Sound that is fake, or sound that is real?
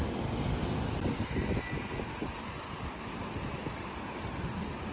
real